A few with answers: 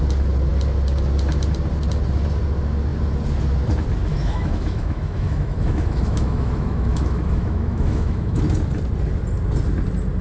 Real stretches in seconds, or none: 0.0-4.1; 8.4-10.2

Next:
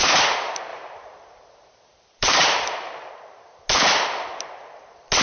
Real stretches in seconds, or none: 0.0-0.7; 3.1-5.2

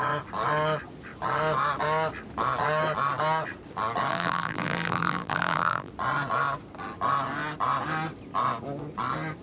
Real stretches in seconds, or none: 0.0-4.1; 5.9-9.4

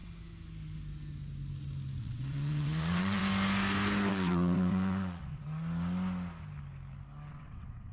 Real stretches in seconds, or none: 0.0-2.0; 3.2-4.1; 5.4-7.3

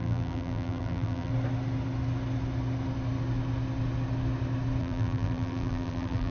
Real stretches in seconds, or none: 1.3-4.8

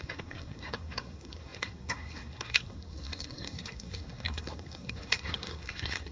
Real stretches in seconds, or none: none

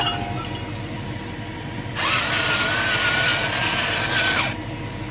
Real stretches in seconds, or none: 0.0-5.1

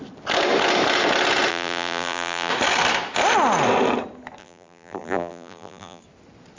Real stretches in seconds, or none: 0.0-1.5; 2.5-4.4; 6.0-6.6